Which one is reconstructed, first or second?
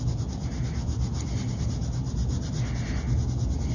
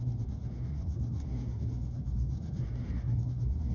second